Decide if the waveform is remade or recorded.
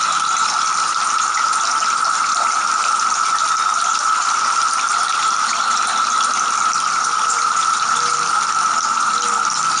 recorded